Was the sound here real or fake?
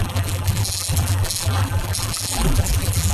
fake